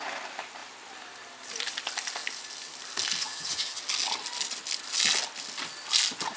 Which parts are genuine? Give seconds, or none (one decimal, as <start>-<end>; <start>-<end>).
0.0-3.2; 3.8-6.4